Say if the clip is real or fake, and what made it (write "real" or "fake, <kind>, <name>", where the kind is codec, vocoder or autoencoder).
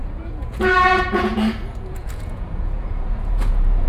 fake, vocoder, Vocos